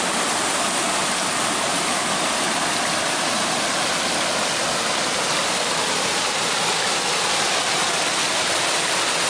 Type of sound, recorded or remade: recorded